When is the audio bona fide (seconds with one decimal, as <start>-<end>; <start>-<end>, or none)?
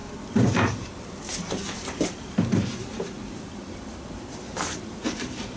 0.0-5.6